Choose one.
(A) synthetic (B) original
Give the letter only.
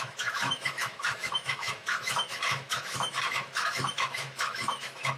A